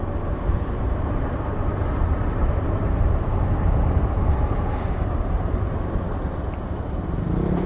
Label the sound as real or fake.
fake